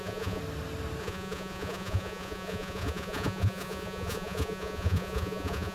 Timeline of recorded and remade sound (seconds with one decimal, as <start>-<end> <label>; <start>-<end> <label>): 0.0-0.4 remade; 0.4-1.0 recorded; 1.0-5.7 remade